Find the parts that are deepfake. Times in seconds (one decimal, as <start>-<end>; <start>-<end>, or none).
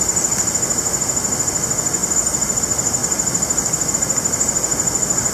none